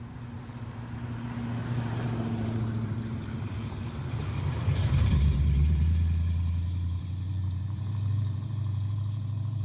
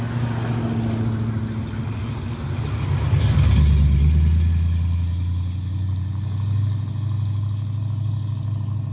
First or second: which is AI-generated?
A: first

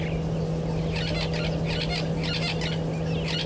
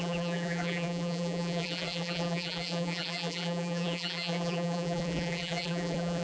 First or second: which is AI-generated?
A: second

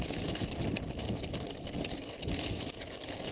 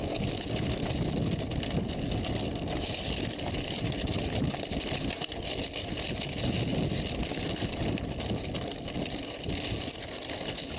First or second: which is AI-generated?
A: first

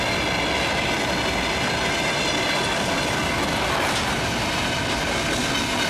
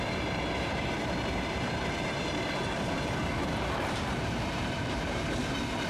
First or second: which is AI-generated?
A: second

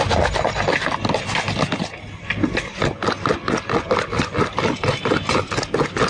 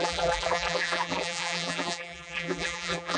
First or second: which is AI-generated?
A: second